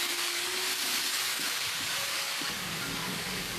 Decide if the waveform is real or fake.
fake